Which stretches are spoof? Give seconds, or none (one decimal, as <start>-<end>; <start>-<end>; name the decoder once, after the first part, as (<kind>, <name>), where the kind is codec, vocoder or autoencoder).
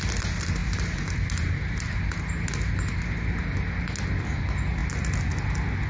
none